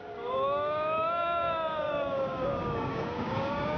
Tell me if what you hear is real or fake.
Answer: fake